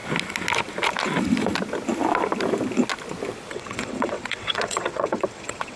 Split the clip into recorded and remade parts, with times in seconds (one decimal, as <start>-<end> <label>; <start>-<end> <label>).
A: 0.0-3.5 recorded; 3.5-5.8 remade